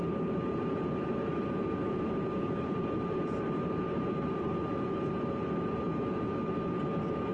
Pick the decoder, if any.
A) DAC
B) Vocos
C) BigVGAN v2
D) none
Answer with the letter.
C